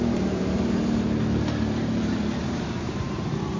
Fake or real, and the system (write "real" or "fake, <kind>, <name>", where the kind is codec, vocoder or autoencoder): fake, vocoder, BigVGAN v2